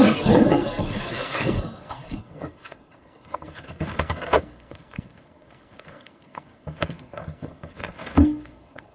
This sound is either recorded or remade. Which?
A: remade